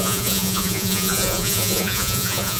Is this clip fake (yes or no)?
yes